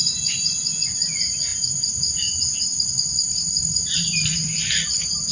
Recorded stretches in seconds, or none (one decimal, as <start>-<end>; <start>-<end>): 0.7-1.5; 4.7-5.3